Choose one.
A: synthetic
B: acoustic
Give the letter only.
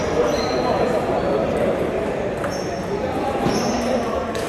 B